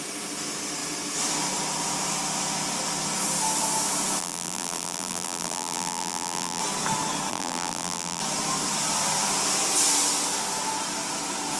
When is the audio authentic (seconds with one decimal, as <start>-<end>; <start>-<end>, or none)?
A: 0.0-4.2; 6.6-7.3; 8.2-11.6